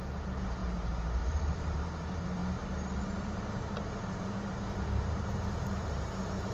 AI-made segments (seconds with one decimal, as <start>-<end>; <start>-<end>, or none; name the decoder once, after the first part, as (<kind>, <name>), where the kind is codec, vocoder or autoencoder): 0.0-2.4 (vocoder, BigVGAN v2); 3.6-6.5